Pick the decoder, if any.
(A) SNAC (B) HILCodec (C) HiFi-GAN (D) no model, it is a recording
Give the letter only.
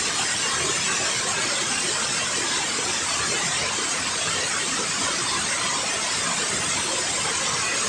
D